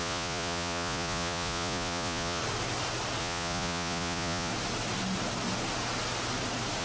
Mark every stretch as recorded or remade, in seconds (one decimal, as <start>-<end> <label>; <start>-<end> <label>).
0.0-2.4 remade; 2.4-3.2 recorded; 3.2-4.5 remade; 4.5-6.8 recorded